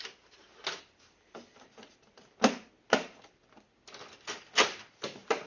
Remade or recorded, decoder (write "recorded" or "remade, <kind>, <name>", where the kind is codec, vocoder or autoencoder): recorded